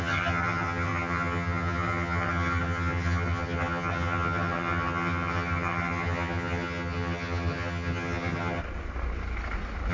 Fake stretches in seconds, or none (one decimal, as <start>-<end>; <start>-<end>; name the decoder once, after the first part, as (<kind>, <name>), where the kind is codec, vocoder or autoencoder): 0.0-8.6 (vocoder, HiFi-GAN)